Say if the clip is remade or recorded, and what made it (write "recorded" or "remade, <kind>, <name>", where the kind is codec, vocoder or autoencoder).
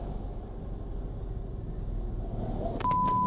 recorded